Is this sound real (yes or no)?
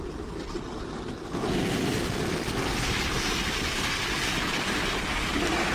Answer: yes